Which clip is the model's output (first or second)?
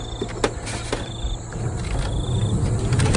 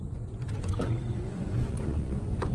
second